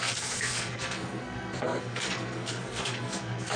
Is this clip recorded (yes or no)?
no